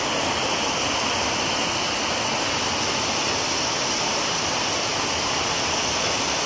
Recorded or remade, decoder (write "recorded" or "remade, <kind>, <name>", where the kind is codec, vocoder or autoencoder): recorded